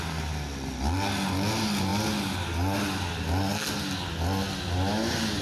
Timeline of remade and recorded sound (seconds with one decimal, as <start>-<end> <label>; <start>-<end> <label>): 0.0-5.4 recorded